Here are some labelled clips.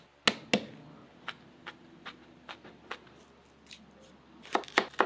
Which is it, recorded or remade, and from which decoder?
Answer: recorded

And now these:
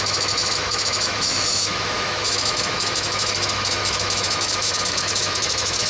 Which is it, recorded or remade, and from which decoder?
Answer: remade, autoencoder, DAC-VAE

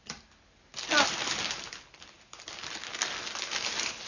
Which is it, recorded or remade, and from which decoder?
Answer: recorded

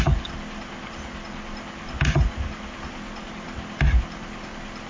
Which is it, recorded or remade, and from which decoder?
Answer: recorded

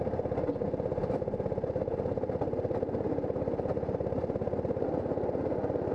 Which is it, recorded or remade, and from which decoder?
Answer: recorded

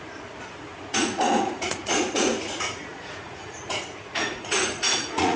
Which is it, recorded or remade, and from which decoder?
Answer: remade, vocoder, Vocos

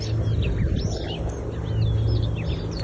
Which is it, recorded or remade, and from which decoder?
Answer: recorded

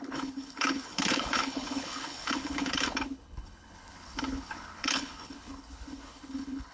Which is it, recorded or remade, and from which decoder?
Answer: remade, codec, HILCodec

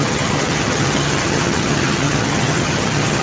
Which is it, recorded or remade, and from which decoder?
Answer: remade, vocoder, HiFi-GAN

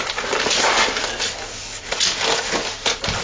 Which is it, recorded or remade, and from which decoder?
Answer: recorded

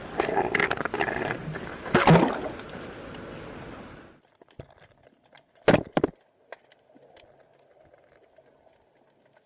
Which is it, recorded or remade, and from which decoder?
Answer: recorded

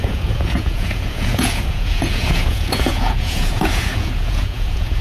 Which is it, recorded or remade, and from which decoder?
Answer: remade, vocoder, Vocos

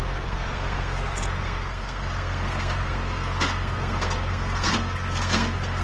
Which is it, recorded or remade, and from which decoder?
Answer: remade, codec, SNAC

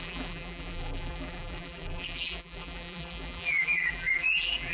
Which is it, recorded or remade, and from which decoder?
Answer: remade, vocoder, BigVGAN v2